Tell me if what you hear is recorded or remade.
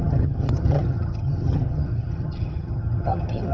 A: remade